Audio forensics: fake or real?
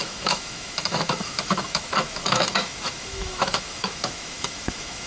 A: fake